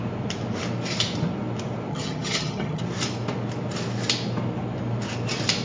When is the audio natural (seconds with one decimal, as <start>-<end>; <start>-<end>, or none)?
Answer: 0.0-1.9; 2.8-5.6